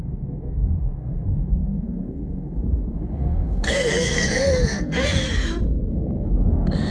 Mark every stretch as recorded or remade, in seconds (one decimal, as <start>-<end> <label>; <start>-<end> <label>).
0.0-5.2 remade; 5.2-5.9 recorded; 5.9-6.9 remade